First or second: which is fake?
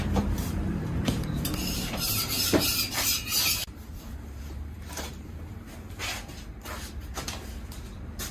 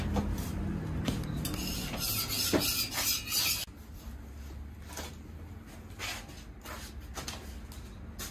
first